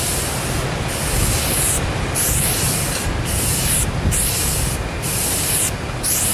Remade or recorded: recorded